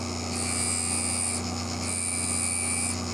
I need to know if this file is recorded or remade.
recorded